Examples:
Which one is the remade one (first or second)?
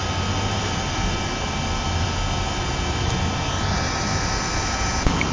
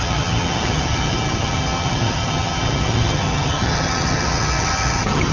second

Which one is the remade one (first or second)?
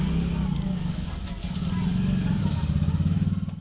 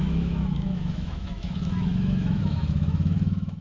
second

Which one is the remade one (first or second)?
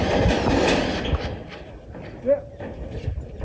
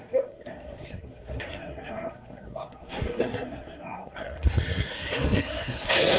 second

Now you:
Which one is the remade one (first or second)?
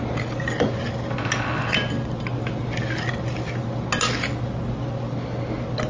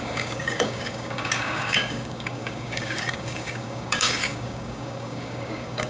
second